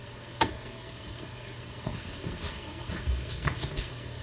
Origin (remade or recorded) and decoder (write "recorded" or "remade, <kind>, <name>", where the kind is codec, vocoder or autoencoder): remade, codec, SNAC